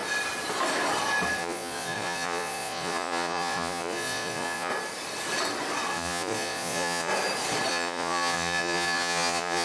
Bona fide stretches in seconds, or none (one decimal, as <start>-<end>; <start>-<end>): 0.0-1.4; 4.7-5.9; 7.1-7.7